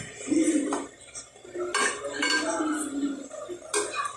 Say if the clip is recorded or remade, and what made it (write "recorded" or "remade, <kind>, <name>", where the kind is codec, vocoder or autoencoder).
recorded